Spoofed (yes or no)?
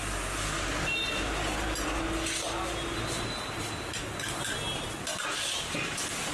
no